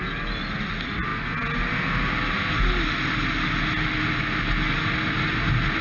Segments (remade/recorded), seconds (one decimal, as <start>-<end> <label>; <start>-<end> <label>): 0.0-5.8 recorded